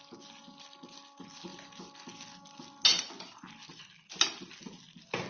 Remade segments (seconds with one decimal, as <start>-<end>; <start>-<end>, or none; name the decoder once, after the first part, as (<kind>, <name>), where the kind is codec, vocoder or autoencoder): none